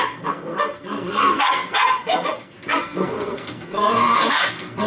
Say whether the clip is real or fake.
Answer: fake